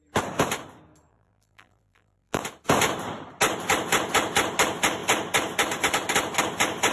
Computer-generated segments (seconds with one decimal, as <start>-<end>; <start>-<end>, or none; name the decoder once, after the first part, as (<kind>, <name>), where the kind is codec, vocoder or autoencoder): 1.1-2.4 (vocoder, BigVGAN v2)